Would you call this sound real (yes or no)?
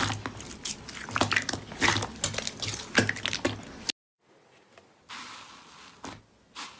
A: yes